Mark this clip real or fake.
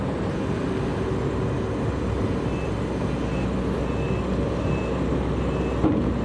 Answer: real